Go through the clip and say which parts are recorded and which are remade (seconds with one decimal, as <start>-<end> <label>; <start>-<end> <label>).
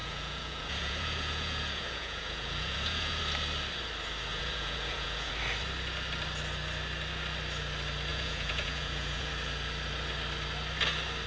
0.0-3.2 remade; 3.2-4.3 recorded; 4.3-5.3 remade; 5.3-8.1 recorded; 8.1-9.3 remade; 9.3-11.3 recorded